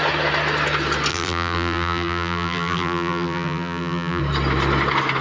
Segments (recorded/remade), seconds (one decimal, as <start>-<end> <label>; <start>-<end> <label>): 0.0-1.1 recorded; 1.1-4.2 remade; 4.2-5.2 recorded